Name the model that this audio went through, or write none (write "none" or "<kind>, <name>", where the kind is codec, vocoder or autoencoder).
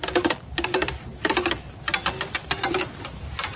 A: none